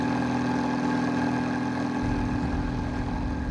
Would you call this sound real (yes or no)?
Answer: yes